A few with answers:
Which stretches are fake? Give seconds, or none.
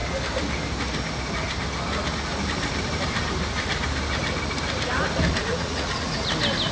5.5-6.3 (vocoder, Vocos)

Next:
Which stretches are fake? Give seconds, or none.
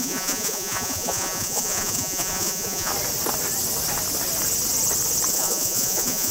0.0-2.9 (vocoder, Vocos); 5.3-6.3